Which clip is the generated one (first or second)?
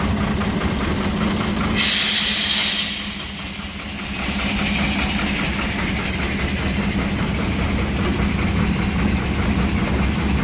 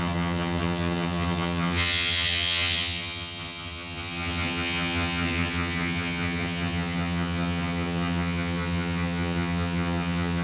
second